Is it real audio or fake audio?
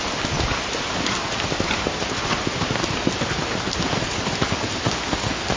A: real